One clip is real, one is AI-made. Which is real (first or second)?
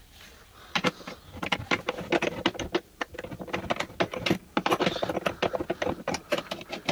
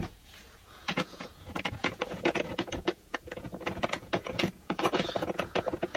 first